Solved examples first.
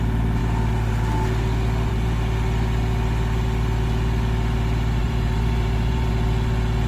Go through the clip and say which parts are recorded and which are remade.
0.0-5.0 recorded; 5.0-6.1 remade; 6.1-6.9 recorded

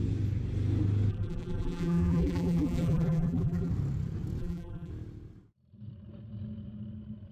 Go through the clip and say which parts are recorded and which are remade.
0.0-1.1 recorded; 1.1-3.7 remade; 3.7-4.4 recorded; 4.4-4.9 remade; 4.9-7.3 recorded

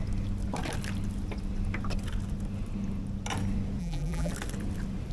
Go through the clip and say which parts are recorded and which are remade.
0.0-3.8 recorded; 3.8-4.3 remade; 4.3-5.1 recorded

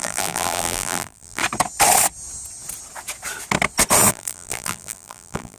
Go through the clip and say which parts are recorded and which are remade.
0.0-1.4 remade; 1.4-4.1 recorded; 4.1-5.6 remade

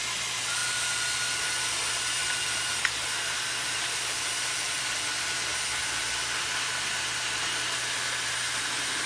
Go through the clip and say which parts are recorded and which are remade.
0.0-0.6 recorded; 0.6-4.8 remade; 4.8-9.1 recorded

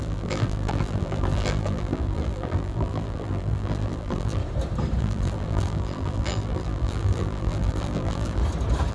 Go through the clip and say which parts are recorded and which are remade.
0.0-4.4 remade; 4.4-5.0 recorded; 5.0-8.4 remade; 8.4-8.9 recorded